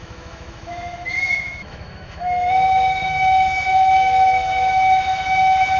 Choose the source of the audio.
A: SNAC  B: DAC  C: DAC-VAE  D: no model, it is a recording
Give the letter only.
C